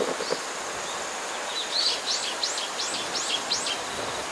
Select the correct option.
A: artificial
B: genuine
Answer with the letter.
B